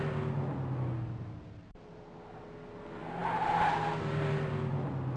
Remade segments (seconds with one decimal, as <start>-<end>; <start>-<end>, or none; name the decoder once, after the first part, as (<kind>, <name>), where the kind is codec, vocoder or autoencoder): none